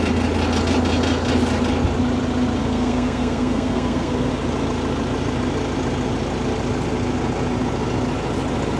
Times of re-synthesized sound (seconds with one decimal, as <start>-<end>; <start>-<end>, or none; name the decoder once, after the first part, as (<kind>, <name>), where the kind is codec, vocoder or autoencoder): 2.6-4.3 (codec, SNAC)